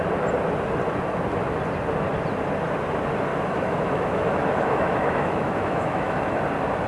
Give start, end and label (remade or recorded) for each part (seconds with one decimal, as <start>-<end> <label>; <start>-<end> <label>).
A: 0.0-3.3 recorded; 3.3-6.4 remade; 6.4-6.9 recorded